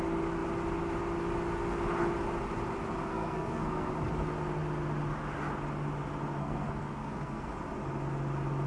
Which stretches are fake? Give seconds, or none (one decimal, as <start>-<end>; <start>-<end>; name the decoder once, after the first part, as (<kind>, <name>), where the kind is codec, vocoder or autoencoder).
3.1-3.9 (codec, SNAC); 6.4-7.5